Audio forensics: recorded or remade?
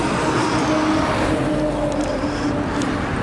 recorded